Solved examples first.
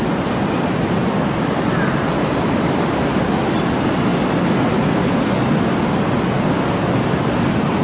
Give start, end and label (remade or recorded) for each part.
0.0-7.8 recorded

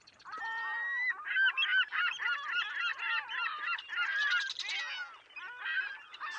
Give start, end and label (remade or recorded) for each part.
0.0-6.4 recorded

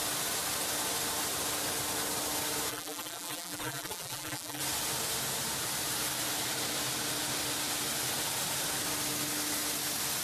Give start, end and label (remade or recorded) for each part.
0.0-2.7 recorded; 2.7-4.6 remade; 4.6-10.2 recorded

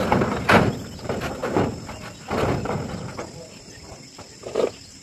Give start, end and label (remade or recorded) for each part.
0.0-5.0 recorded

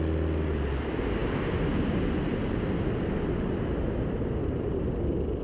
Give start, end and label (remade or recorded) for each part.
0.0-5.4 recorded

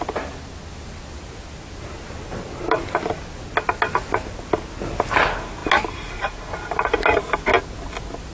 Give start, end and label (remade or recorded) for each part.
0.0-8.3 recorded

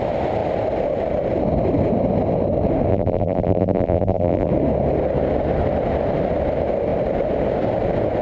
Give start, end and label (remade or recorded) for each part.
0.0-2.9 recorded; 2.9-4.5 remade; 4.5-8.2 recorded

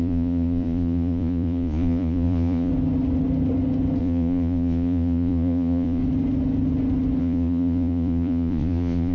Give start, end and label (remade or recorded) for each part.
0.0-2.7 remade; 2.7-4.0 recorded; 4.0-6.0 remade; 6.0-7.2 recorded; 7.2-9.1 remade